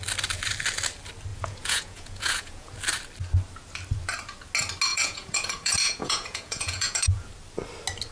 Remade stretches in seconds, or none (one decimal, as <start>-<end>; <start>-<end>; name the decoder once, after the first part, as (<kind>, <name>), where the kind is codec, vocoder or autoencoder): 1.3-2.7 (vocoder, Vocos); 4.9-7.3